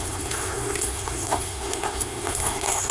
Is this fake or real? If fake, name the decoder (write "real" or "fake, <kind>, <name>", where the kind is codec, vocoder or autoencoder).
fake, codec, SNAC